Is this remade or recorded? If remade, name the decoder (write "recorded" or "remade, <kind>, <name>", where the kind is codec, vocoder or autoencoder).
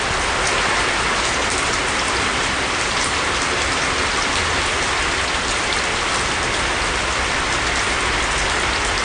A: recorded